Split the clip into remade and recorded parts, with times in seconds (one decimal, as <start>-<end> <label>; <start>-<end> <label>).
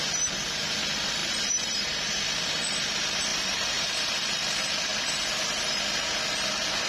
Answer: 0.0-1.2 recorded; 1.2-2.0 remade; 2.0-3.3 recorded; 3.3-3.9 remade; 3.9-6.9 recorded